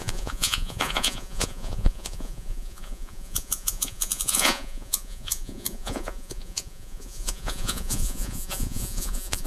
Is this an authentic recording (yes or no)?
no